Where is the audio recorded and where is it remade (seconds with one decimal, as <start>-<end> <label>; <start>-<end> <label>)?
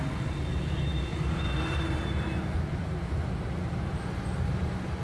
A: 0.0-1.1 recorded; 1.1-4.1 remade; 4.1-5.0 recorded